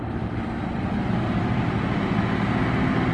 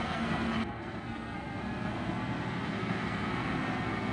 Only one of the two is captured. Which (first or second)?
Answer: first